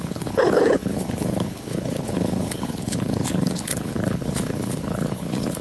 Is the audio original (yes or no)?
no